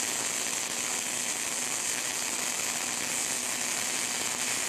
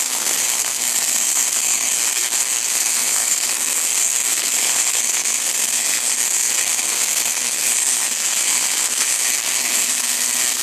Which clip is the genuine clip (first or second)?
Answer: first